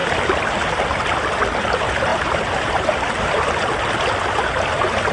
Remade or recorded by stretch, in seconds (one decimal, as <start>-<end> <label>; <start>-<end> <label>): 0.0-2.1 recorded; 2.1-3.0 remade; 3.0-5.1 recorded